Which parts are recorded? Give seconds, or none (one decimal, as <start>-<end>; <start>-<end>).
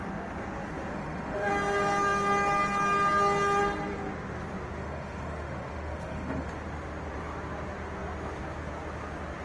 0.0-0.9; 1.5-4.8; 6.5-9.4